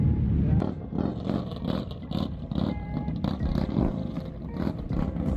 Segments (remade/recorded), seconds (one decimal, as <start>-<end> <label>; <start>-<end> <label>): 0.0-5.4 remade